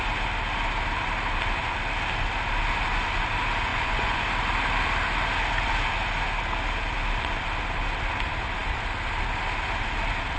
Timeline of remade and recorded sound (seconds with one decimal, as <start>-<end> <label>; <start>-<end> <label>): 0.0-3.7 recorded; 3.7-4.2 remade; 4.2-10.4 recorded